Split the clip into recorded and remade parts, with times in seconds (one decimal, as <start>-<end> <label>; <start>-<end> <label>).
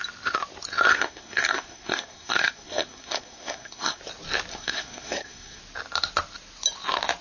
0.0-0.9 recorded; 0.9-4.0 remade; 4.0-4.5 recorded; 4.5-5.6 remade; 5.6-7.2 recorded